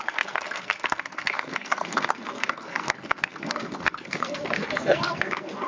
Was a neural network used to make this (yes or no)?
yes